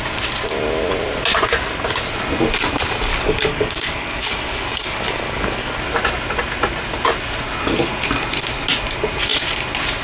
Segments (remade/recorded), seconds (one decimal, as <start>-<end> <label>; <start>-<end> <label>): 0.0-3.1 recorded; 3.1-5.8 remade; 5.8-10.0 recorded